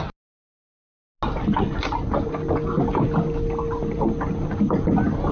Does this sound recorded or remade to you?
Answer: recorded